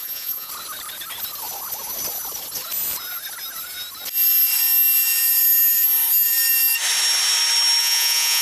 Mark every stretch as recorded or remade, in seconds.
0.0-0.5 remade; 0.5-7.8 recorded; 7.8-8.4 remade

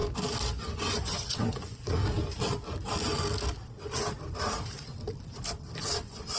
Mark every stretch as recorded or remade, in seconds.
0.0-0.7 recorded; 0.7-2.0 remade; 2.0-5.8 recorded; 5.8-6.4 remade

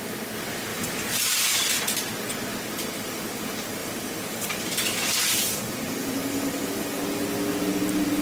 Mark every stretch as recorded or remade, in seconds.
0.0-0.7 recorded; 0.7-1.8 remade; 1.8-3.8 recorded; 3.8-5.7 remade; 5.7-8.2 recorded

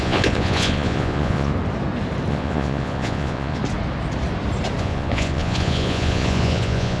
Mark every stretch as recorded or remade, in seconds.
0.0-1.5 remade; 1.5-2.3 recorded; 2.3-3.6 remade; 3.6-4.8 recorded; 4.8-7.0 remade

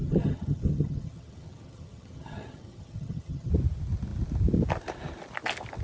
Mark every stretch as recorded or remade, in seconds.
0.0-3.5 remade; 3.5-5.8 recorded